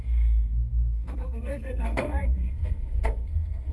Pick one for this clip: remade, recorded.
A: remade